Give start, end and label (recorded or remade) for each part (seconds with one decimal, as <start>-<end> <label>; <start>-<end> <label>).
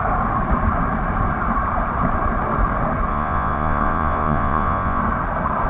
0.0-3.1 recorded; 3.1-5.0 remade; 5.0-5.7 recorded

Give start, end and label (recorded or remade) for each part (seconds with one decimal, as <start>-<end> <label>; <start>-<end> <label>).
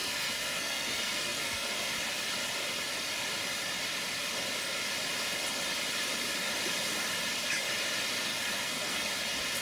0.0-1.9 remade; 1.9-8.3 recorded; 8.3-9.1 remade; 9.1-9.6 recorded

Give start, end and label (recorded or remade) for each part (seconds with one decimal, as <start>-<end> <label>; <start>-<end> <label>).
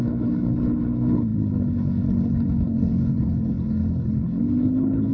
0.0-5.1 remade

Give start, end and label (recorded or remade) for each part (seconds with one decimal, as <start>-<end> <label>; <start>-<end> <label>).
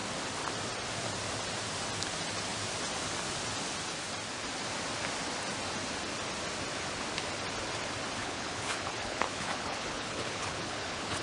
0.0-8.2 recorded; 8.2-11.2 remade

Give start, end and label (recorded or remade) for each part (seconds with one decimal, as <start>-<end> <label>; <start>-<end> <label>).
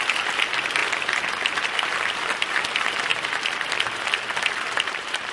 0.0-5.3 recorded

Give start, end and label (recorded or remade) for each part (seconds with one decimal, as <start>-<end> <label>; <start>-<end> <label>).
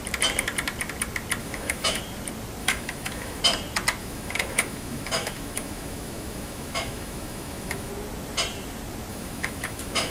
0.0-1.4 recorded; 1.4-2.0 remade; 2.0-2.6 recorded; 2.6-3.4 remade; 3.4-4.0 recorded; 4.0-7.9 remade; 7.9-9.1 recorded; 9.1-10.1 remade